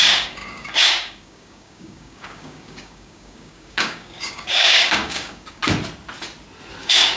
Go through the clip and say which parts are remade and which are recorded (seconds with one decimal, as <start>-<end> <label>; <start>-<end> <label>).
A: 0.0-5.6 remade; 5.6-6.8 recorded; 6.8-7.2 remade